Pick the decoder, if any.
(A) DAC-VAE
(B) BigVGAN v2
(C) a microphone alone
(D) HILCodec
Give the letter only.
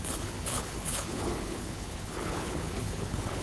D